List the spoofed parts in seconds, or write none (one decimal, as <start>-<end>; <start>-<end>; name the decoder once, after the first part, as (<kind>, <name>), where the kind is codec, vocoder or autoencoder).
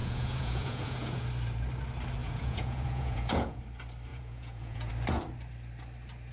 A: 0.0-1.2 (vocoder, Vocos); 2.2-3.6; 4.1-4.9